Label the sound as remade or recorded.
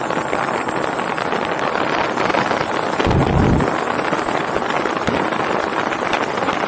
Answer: recorded